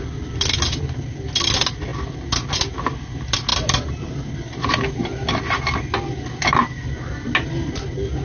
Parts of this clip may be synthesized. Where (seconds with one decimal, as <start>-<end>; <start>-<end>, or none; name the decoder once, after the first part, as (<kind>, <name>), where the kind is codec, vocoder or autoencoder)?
none